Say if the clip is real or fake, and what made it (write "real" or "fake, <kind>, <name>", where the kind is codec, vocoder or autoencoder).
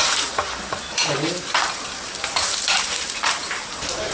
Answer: fake, vocoder, BigVGAN v2